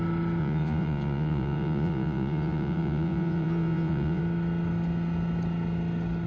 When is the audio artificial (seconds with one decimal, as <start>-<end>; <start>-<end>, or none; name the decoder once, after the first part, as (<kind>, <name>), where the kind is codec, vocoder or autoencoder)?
0.4-4.2 (vocoder, Vocos)